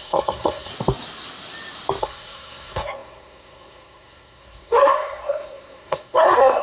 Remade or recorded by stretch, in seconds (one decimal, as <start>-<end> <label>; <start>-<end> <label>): 0.0-0.7 remade; 0.7-2.0 recorded; 2.0-6.6 remade